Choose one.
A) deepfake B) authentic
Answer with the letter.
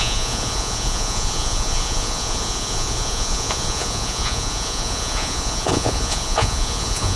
A